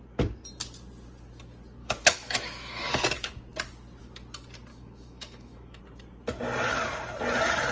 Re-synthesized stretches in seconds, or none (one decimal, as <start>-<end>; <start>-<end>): 1.8-3.0; 4.7-5.8